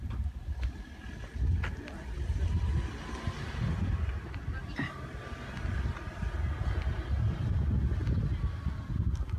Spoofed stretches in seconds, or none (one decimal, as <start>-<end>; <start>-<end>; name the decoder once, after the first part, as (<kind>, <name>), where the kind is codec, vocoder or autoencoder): 4.6-5.2 (vocoder, BigVGAN v2)